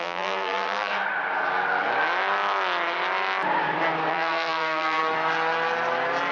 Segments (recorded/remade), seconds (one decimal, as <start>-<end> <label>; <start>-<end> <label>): 0.0-0.9 remade; 0.9-4.1 recorded; 4.1-5.0 remade; 5.0-6.3 recorded